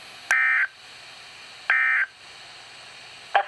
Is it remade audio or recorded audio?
recorded